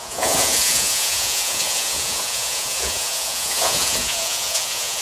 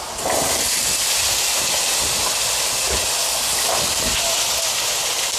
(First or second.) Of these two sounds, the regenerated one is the first